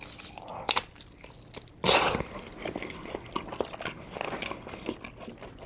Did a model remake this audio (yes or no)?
no